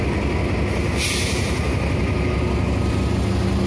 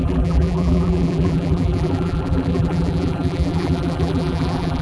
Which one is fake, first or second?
second